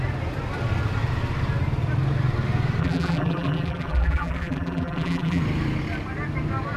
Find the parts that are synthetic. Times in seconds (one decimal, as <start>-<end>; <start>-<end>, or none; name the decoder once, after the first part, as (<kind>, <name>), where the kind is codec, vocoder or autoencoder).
2.8-5.4 (vocoder, BigVGAN v2)